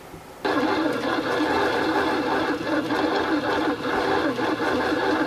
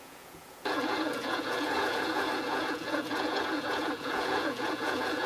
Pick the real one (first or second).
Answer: first